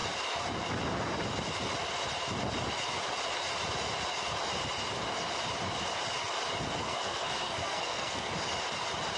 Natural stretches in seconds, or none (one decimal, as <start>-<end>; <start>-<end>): 0.0-6.8; 8.3-9.2